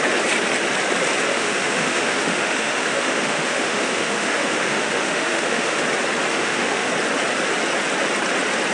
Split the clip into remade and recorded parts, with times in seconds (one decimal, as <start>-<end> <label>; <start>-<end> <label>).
0.0-1.3 recorded; 1.3-5.8 remade; 5.8-6.3 recorded; 6.3-6.9 remade; 6.9-8.7 recorded